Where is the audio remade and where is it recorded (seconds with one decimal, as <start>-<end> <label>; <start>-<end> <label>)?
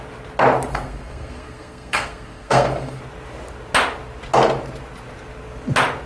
0.0-0.7 recorded; 0.7-3.0 remade; 3.0-6.1 recorded